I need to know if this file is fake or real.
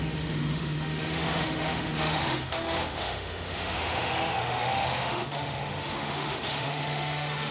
fake